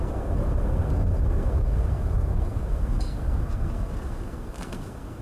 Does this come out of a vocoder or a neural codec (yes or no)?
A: yes